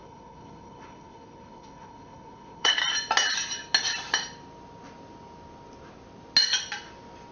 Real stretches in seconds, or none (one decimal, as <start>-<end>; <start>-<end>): 2.8-7.3